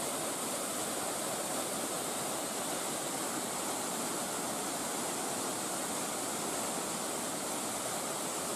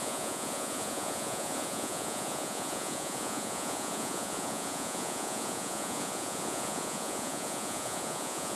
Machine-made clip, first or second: second